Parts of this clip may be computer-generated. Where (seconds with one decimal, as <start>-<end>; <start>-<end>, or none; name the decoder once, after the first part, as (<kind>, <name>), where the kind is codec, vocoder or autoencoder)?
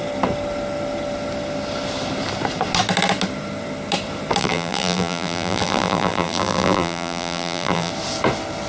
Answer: 4.4-7.9 (vocoder, BigVGAN v2)